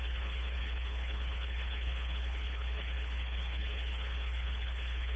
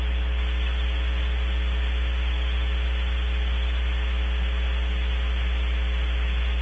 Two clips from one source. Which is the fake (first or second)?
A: first